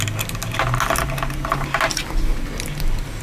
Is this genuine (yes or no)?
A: yes